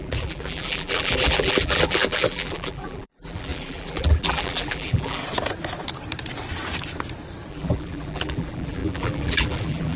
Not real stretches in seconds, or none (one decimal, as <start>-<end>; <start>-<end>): 0.0-5.2; 7.5-10.0